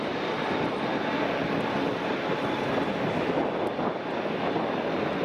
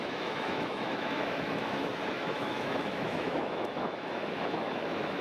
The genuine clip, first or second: first